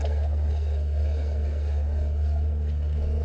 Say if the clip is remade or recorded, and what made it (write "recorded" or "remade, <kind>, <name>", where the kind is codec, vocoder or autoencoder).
remade, codec, SNAC